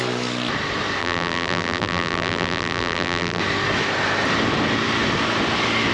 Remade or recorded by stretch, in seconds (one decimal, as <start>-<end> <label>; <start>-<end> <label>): 0.0-1.0 recorded; 1.0-3.4 remade; 3.4-5.9 recorded